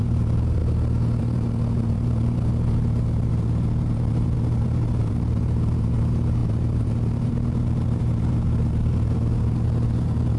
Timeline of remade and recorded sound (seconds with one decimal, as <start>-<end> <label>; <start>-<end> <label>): 0.0-0.6 remade; 0.6-1.2 recorded; 1.2-10.4 remade